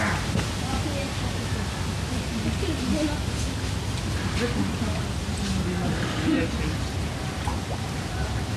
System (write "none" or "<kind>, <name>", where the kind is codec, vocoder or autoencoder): none